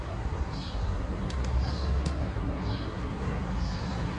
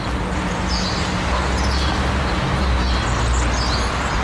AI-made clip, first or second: first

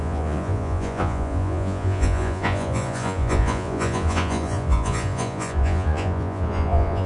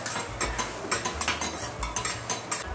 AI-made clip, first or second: first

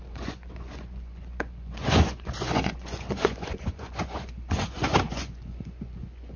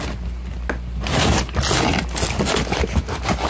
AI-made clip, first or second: first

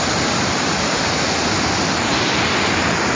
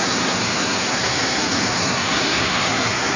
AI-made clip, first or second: second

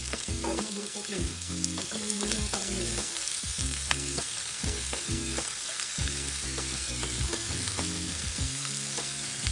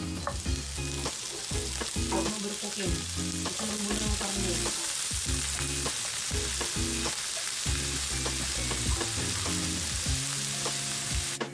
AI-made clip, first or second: first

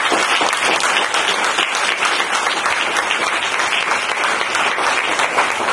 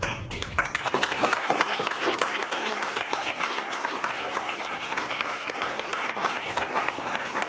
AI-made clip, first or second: second